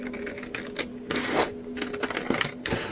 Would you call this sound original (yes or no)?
yes